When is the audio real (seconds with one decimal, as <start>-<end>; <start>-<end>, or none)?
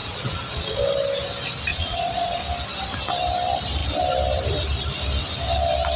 0.8-1.7; 2.4-6.0